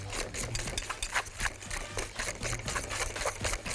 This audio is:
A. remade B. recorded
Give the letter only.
B